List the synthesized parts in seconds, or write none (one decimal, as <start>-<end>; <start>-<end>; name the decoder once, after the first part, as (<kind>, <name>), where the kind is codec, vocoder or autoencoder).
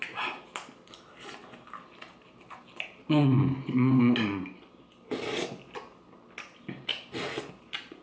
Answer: none